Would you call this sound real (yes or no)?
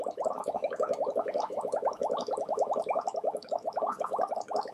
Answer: no